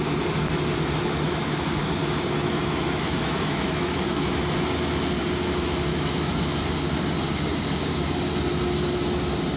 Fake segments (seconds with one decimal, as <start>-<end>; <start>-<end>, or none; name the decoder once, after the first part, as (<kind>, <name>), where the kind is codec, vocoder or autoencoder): 2.0-4.3 (autoencoder, DAC-VAE); 5.9-6.6